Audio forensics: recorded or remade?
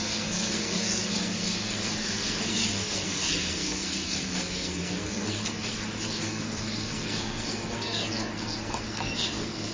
remade